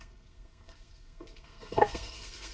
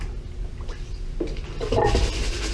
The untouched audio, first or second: second